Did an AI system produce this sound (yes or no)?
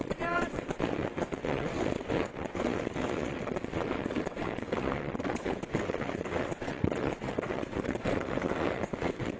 yes